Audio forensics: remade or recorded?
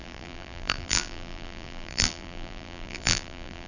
remade